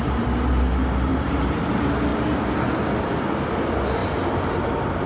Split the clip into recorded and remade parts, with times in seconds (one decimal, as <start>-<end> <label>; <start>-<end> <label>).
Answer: 0.0-1.1 recorded; 1.1-1.7 remade; 1.7-5.1 recorded